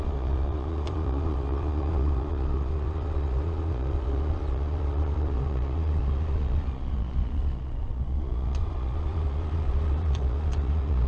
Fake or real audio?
fake